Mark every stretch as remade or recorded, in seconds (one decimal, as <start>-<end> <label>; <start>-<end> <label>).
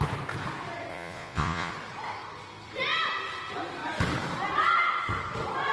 0.0-0.9 recorded; 0.9-1.7 remade; 1.7-5.7 recorded